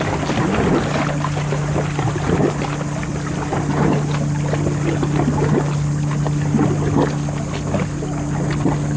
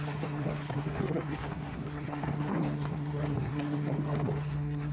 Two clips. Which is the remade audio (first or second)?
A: second